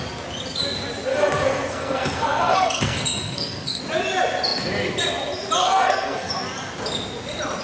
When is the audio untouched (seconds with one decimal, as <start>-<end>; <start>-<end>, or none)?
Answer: 0.0-1.1; 3.8-5.6; 6.3-7.6